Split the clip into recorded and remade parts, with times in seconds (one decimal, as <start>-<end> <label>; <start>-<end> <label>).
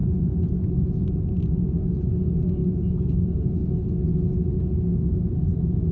0.0-5.9 recorded